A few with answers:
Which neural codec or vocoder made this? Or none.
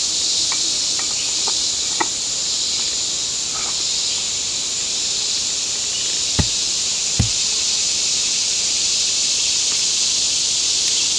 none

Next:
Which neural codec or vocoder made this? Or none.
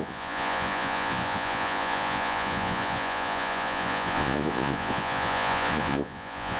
vocoder, Vocos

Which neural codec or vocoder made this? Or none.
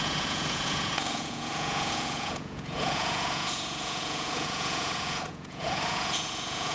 vocoder, Vocos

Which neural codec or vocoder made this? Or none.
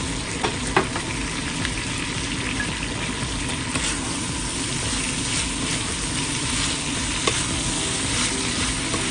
none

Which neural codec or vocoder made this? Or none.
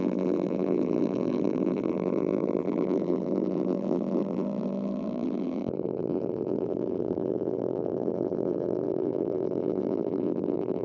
vocoder, BigVGAN v2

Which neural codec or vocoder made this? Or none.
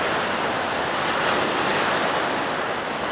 none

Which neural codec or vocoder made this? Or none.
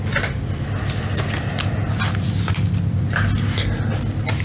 none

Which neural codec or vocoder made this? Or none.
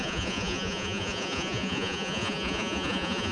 vocoder, Vocos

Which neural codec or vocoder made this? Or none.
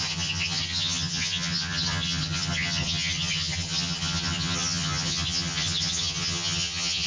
vocoder, HiFi-GAN